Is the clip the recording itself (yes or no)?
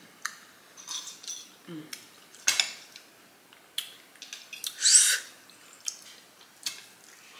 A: yes